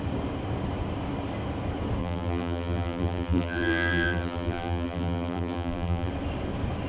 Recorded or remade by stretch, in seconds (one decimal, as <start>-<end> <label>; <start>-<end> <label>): 0.0-2.0 recorded; 2.0-6.1 remade; 6.1-6.9 recorded